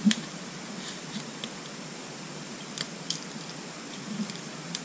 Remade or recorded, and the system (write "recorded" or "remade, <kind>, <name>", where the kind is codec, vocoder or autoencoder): recorded